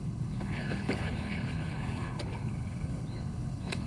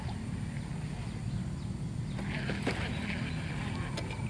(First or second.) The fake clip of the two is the first